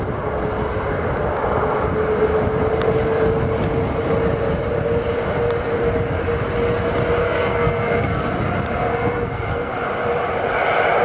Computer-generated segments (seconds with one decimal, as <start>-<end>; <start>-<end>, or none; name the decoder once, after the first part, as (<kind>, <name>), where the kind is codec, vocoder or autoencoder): 7.2-8.3 (codec, SNAC); 8.9-9.7